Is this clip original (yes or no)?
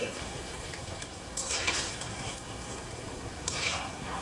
no